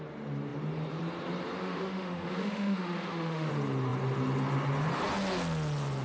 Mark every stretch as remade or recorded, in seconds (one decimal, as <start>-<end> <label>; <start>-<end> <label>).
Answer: 0.0-1.6 recorded; 1.6-3.5 remade; 3.5-6.0 recorded